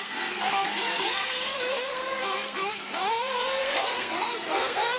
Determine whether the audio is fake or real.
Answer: fake